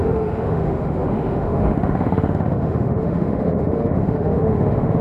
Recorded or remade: remade